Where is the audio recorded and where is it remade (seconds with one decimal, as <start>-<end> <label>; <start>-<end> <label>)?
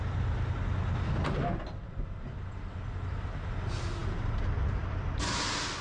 0.0-5.8 recorded